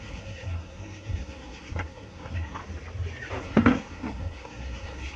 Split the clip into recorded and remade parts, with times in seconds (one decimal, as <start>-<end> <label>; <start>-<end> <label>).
0.0-2.6 remade; 2.6-3.4 recorded; 3.4-5.2 remade